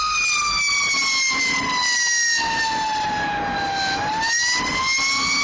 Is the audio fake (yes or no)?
no